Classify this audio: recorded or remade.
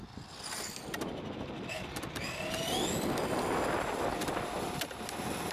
recorded